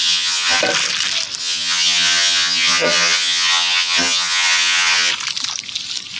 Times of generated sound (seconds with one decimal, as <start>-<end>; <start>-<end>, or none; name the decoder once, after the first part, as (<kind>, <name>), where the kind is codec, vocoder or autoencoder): 0.0-0.6 (vocoder, HiFi-GAN); 1.4-5.1